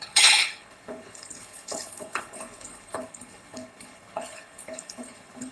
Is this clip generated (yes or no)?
yes